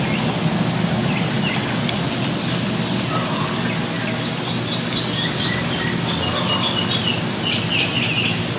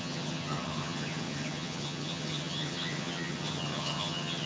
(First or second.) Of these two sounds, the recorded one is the first